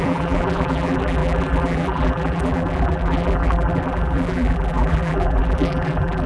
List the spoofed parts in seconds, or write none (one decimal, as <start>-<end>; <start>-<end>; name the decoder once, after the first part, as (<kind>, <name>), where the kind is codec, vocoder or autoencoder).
0.0-6.3 (vocoder, BigVGAN v2)